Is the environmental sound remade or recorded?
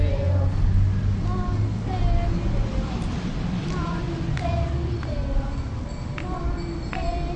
recorded